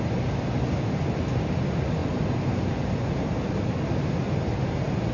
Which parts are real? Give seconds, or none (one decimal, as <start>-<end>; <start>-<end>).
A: 0.0-5.1